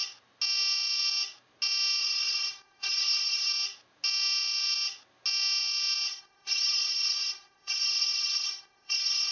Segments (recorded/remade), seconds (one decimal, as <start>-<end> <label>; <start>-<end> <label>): 0.0-2.0 recorded; 2.0-3.5 remade; 3.5-6.1 recorded; 6.1-9.3 remade